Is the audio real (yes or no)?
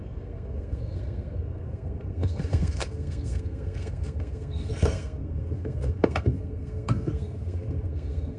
no